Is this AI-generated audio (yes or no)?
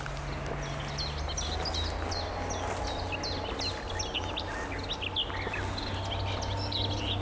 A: no